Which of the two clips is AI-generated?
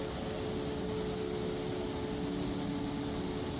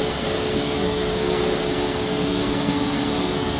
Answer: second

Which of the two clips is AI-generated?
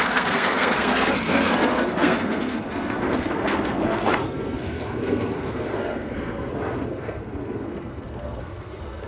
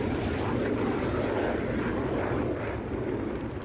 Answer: first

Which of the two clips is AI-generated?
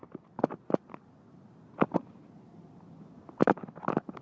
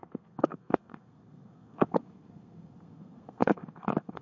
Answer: second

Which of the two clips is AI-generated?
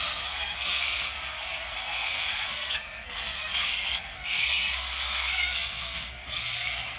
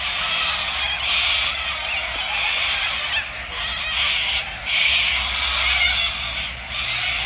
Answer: first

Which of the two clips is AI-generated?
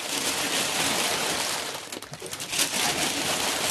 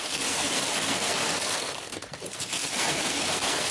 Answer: second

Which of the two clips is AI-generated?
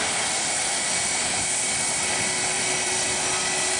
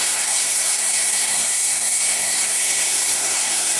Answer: second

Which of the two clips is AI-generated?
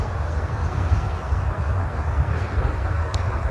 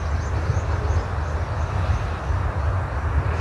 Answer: first